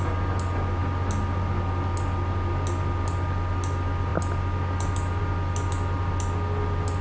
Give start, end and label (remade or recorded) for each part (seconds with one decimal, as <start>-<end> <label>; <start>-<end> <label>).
0.0-7.0 recorded